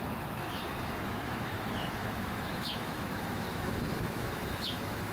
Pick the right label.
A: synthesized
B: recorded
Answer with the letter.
A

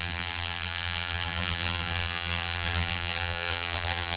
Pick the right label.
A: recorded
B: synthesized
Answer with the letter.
B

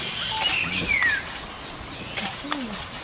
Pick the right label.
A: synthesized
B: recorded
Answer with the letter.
B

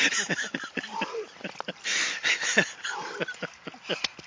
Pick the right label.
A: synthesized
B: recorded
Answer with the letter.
B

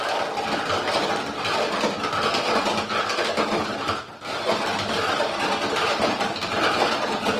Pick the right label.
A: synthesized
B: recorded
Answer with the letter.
A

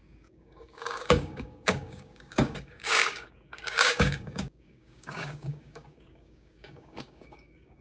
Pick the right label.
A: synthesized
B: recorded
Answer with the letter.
A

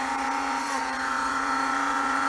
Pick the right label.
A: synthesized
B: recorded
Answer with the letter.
A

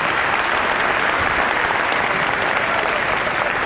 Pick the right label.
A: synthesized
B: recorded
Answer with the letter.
A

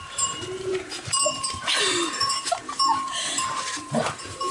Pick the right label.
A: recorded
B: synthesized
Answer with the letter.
B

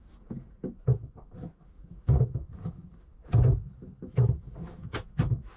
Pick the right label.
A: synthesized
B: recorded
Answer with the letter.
A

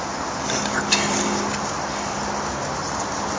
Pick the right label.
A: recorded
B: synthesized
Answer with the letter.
A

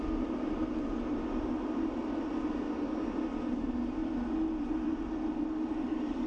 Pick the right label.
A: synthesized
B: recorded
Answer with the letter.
B